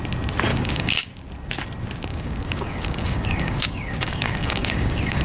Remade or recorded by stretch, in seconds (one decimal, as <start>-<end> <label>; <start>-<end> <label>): 0.0-0.5 recorded; 0.5-1.1 remade; 1.1-2.1 recorded; 2.1-5.2 remade